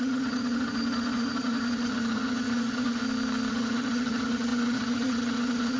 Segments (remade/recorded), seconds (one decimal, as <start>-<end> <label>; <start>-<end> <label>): 0.0-3.0 remade; 3.0-3.5 recorded; 3.5-5.8 remade